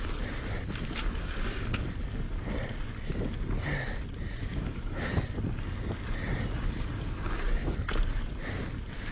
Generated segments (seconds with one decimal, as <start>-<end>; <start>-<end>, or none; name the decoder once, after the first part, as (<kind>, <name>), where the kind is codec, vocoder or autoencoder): 4.4-5.2 (autoencoder, DAC-VAE)

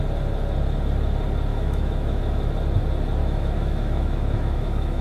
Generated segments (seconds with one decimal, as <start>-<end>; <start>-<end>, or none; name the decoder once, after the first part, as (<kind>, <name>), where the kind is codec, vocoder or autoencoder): 1.5-2.2 (autoencoder, DAC-VAE); 3.2-5.0

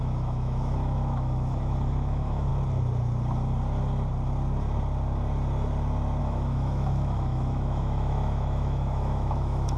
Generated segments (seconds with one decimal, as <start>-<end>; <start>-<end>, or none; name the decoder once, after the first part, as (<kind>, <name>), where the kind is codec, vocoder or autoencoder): 0.0-2.5 (autoencoder, DAC-VAE); 6.2-9.8

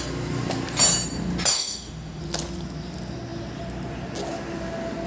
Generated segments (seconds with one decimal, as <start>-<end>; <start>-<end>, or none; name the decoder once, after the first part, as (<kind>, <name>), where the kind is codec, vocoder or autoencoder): 1.5-2.2 (autoencoder, DAC-VAE)